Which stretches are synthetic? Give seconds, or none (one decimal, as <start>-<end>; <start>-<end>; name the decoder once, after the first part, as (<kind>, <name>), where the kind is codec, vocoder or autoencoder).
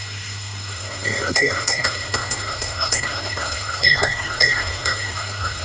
0.0-5.6 (codec, SNAC)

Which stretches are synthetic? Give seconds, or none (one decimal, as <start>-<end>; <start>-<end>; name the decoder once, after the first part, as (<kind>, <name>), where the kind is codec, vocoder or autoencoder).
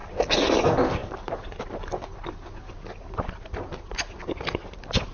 none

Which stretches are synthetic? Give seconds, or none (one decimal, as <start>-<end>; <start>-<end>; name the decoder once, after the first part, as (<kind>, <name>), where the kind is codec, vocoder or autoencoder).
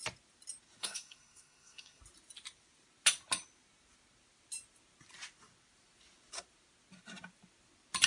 0.8-2.0 (codec, SNAC)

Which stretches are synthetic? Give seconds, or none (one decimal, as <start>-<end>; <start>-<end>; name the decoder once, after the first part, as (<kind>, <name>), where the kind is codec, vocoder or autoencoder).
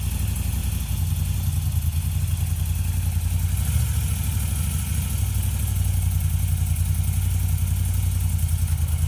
none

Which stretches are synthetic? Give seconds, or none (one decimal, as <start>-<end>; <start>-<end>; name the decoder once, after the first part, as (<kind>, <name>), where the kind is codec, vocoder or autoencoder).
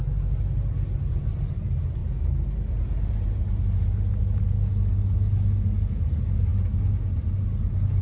none